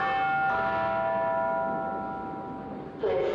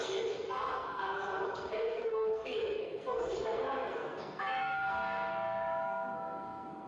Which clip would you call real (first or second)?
first